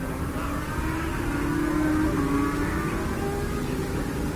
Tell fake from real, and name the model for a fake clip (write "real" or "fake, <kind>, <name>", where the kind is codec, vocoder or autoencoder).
real